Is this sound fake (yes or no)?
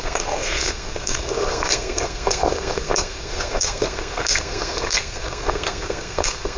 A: yes